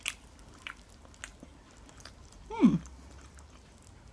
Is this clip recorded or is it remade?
recorded